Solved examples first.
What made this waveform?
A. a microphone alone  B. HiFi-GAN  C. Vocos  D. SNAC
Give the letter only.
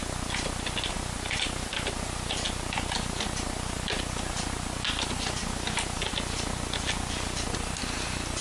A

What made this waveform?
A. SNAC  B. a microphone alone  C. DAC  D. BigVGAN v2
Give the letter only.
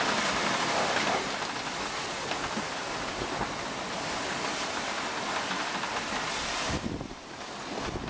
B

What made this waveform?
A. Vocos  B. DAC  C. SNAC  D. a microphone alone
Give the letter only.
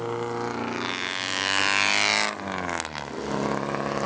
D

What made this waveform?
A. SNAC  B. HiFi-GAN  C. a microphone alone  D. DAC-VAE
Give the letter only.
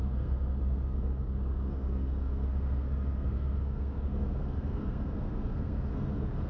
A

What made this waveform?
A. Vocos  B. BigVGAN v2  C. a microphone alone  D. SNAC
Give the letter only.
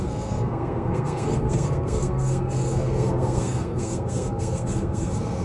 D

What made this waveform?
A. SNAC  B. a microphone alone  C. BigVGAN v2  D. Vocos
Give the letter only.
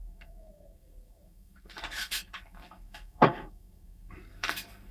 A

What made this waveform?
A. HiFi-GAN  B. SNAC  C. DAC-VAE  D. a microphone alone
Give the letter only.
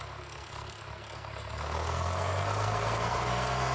B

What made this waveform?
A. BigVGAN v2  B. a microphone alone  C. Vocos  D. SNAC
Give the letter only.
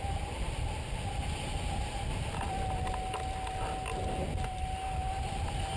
B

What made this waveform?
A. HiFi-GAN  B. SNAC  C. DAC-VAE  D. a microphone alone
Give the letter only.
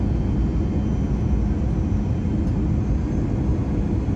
D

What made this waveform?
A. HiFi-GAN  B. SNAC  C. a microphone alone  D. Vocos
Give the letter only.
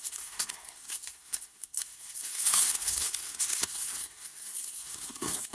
B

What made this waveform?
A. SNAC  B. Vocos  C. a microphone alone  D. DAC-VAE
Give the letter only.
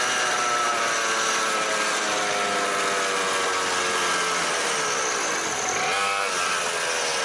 C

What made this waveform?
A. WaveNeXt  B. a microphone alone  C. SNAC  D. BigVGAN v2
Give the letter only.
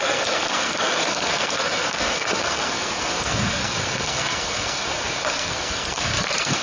C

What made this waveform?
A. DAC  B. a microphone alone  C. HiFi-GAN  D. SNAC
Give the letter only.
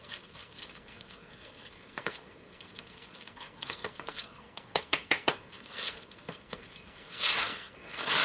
D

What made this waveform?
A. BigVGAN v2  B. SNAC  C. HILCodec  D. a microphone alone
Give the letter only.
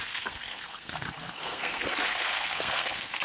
B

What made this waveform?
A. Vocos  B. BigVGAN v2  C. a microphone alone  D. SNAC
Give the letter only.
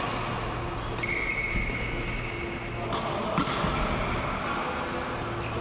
C